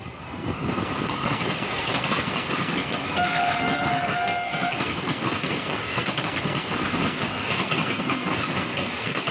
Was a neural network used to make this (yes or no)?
yes